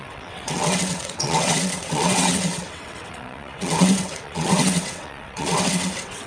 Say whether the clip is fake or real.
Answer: fake